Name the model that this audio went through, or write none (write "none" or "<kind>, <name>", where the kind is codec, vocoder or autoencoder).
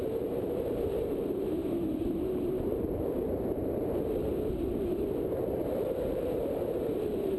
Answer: vocoder, BigVGAN v2